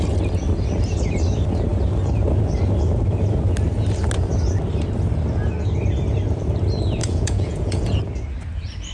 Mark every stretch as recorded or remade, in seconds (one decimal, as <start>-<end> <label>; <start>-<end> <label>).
0.0-7.0 recorded; 7.0-8.0 remade; 8.0-8.9 recorded